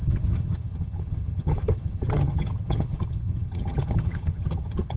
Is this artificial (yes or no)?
yes